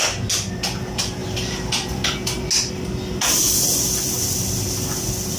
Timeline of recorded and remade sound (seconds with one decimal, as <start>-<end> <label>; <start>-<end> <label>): 0.0-5.4 recorded